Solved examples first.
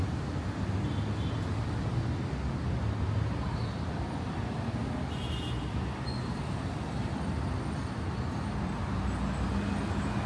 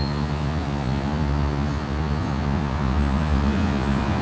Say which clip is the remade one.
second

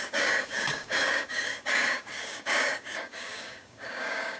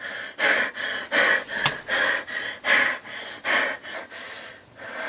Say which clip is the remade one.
first